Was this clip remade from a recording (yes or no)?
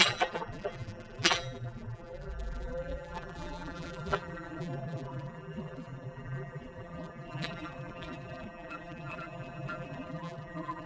yes